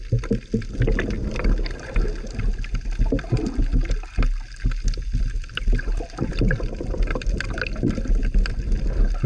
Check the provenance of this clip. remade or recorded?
recorded